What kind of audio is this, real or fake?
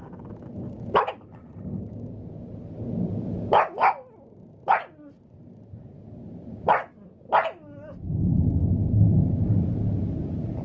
real